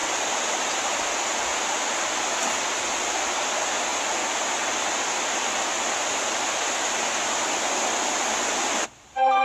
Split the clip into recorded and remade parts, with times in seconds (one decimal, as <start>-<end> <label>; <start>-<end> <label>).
0.0-0.8 remade; 0.8-9.4 recorded